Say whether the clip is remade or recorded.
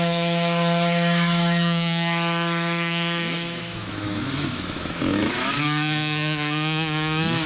remade